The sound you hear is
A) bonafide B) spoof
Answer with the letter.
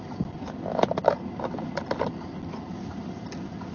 A